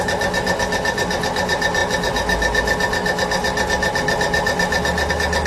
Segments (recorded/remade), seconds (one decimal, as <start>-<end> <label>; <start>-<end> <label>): 0.0-5.5 recorded